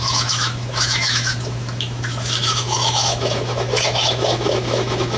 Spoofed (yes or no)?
yes